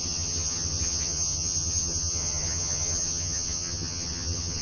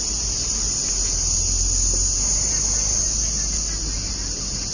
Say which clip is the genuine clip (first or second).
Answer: second